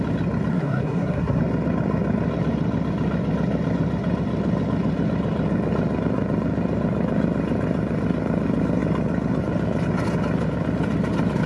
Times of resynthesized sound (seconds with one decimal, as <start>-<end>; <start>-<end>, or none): 0.5-1.4